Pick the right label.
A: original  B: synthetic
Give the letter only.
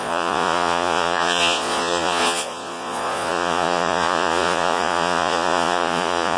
B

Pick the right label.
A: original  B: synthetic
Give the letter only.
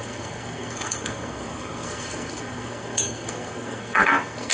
B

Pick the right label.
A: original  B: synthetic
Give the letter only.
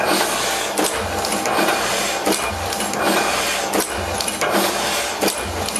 A